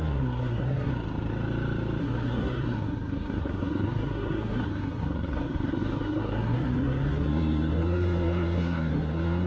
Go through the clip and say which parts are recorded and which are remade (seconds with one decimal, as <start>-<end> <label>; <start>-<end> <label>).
0.0-0.9 remade; 0.9-2.0 recorded; 2.0-9.5 remade